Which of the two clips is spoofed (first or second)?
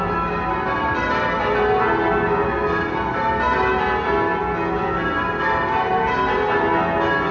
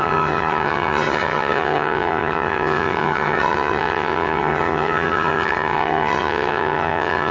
second